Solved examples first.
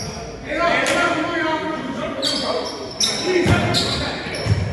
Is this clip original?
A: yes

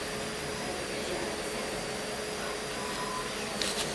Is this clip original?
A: yes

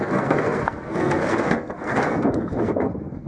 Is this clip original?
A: no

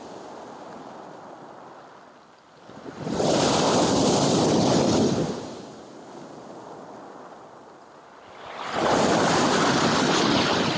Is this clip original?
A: yes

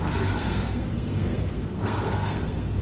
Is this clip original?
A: no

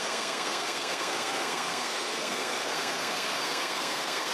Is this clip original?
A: no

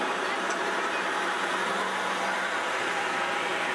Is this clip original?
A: yes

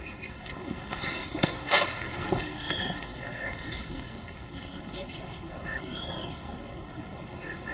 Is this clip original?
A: no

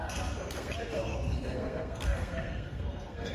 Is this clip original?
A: no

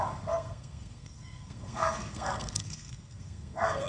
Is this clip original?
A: no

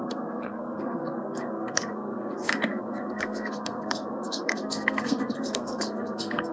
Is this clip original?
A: no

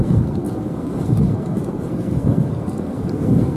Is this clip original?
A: no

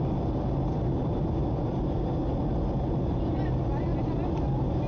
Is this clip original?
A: yes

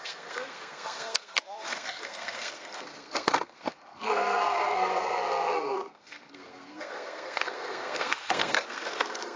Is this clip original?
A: no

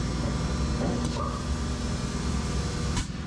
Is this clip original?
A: yes